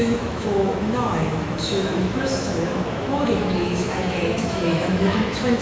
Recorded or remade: remade